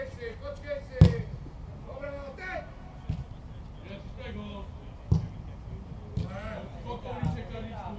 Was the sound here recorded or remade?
recorded